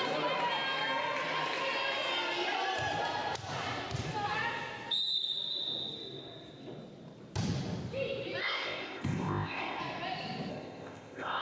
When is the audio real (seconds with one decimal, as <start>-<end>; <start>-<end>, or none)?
0.0-8.4; 9.8-10.5